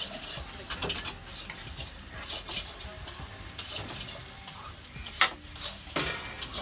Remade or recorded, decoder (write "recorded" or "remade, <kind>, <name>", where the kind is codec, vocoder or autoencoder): recorded